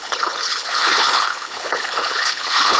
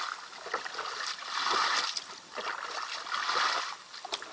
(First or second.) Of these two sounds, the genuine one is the second